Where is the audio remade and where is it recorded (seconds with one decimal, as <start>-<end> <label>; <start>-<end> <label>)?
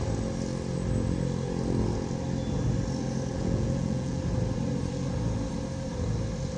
0.0-3.3 recorded; 3.3-4.2 remade; 4.2-6.6 recorded